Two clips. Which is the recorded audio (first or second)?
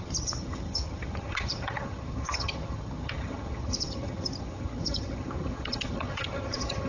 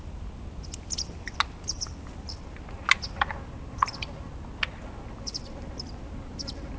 second